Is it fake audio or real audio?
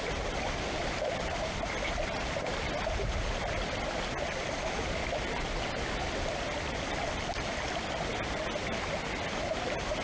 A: real